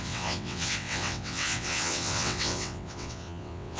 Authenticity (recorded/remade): remade